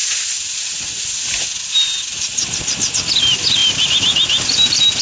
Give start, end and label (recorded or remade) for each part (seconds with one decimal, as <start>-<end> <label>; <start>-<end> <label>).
0.0-2.3 recorded; 2.3-2.9 remade; 2.9-5.0 recorded